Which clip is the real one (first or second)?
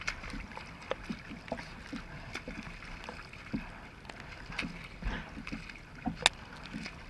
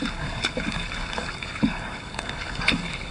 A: first